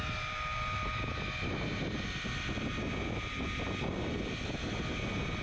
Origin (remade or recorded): recorded